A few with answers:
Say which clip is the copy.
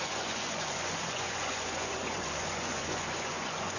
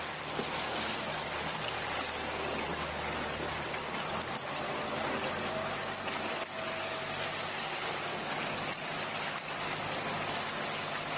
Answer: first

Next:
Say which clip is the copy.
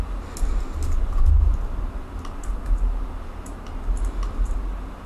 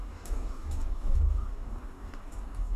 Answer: second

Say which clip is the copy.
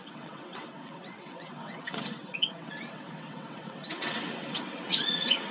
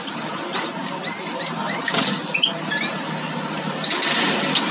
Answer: first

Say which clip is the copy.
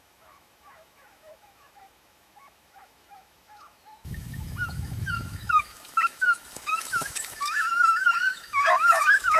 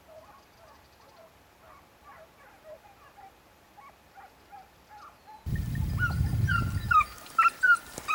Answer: first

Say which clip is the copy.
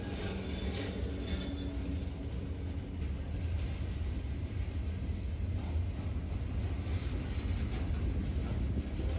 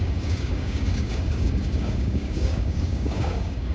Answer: second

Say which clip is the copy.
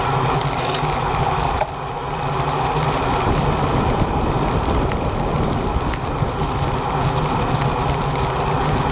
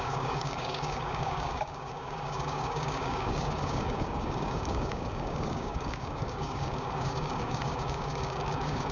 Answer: second